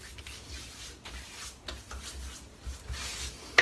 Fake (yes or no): no